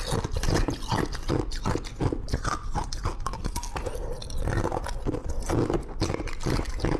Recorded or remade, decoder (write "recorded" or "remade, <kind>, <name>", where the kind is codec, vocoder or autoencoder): recorded